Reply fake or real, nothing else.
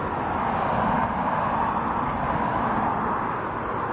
real